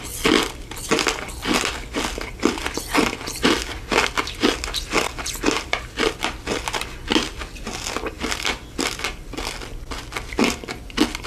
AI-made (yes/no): no